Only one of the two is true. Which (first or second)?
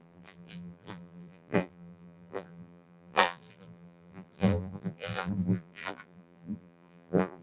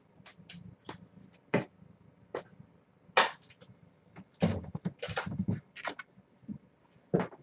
second